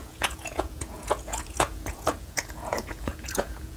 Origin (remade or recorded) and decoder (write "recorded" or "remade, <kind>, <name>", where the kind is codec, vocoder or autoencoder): remade, vocoder, Vocos